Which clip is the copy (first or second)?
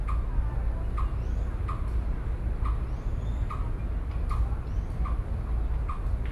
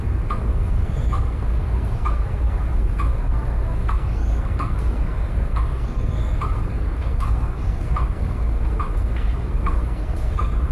second